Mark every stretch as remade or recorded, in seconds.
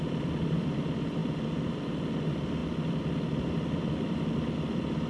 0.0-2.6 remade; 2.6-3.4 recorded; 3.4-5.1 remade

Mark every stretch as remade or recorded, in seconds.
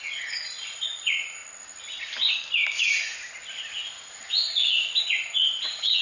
0.0-1.4 remade; 1.4-5.0 recorded; 5.0-6.0 remade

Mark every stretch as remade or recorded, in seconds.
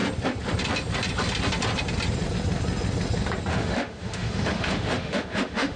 0.0-3.5 recorded; 3.5-5.8 remade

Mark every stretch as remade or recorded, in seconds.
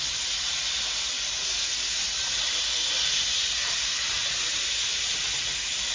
0.0-5.9 recorded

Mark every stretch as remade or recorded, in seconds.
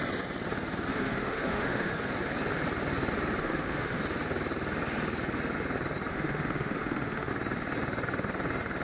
0.0-0.9 recorded; 0.9-1.9 remade; 1.9-3.4 recorded; 3.4-4.0 remade; 4.0-6.1 recorded; 6.1-7.3 remade; 7.3-8.8 recorded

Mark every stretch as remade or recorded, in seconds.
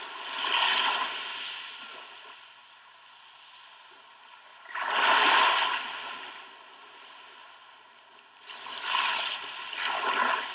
0.0-10.5 recorded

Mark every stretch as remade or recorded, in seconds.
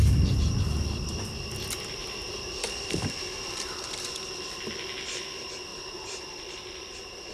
0.0-2.0 recorded; 2.0-4.1 remade; 4.1-5.7 recorded; 5.7-7.3 remade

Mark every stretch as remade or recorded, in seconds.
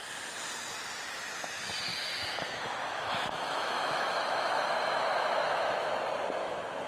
0.0-1.9 recorded; 1.9-6.0 remade; 6.0-6.4 recorded; 6.4-6.9 remade